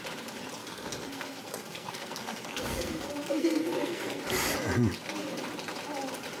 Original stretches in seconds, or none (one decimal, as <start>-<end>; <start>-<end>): 0.0-0.6; 4.2-6.4